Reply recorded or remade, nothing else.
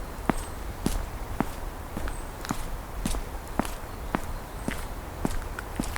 remade